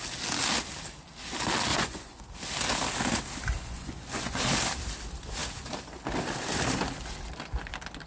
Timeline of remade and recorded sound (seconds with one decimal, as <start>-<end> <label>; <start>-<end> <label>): 0.0-1.7 recorded; 1.7-2.2 remade; 2.2-3.6 recorded; 3.6-4.4 remade; 4.4-8.1 recorded